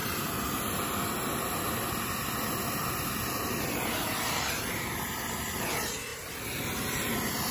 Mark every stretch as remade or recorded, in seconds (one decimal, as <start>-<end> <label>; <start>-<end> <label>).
0.0-7.5 recorded